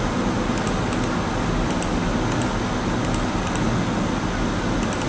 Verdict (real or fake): real